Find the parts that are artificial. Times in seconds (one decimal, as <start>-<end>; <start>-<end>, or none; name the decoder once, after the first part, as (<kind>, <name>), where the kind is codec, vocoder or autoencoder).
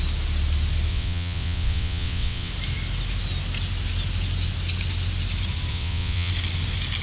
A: 0.9-2.5 (vocoder, WaveNeXt); 5.7-6.3